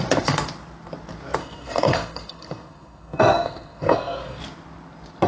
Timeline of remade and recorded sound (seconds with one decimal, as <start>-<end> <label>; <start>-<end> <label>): 0.0-1.4 recorded; 1.4-4.4 remade; 4.4-5.3 recorded